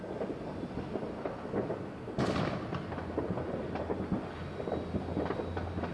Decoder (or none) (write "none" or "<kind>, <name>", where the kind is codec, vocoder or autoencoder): none